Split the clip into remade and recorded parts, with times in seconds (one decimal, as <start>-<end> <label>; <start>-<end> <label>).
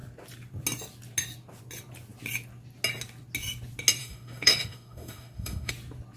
0.0-4.0 recorded; 4.0-5.7 remade; 5.7-6.2 recorded